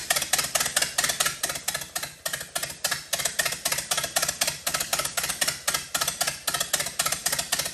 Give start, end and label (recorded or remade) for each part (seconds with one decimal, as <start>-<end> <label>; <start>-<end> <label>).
0.0-4.7 recorded; 4.7-5.3 remade; 5.3-7.7 recorded